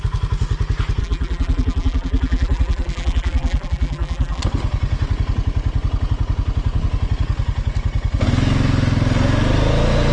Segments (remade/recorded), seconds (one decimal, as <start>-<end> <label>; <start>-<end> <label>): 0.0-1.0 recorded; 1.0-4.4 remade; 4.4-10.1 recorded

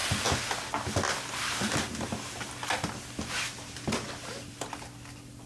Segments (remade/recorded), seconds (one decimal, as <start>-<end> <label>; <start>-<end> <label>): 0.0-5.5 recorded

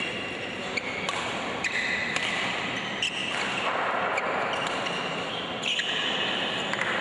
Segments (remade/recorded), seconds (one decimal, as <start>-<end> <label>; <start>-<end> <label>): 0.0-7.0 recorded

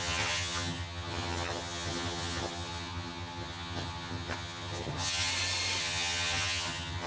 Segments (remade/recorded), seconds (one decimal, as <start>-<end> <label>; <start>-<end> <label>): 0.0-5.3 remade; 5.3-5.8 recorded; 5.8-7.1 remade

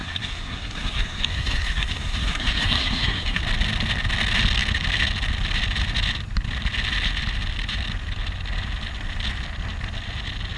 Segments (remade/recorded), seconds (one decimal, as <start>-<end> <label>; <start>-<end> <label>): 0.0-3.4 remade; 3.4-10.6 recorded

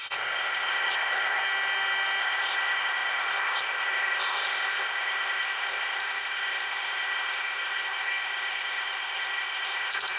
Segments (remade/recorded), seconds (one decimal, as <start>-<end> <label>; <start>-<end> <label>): 0.0-1.4 remade; 1.4-2.2 recorded; 2.2-10.2 remade